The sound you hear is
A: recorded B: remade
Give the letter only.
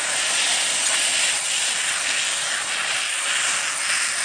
A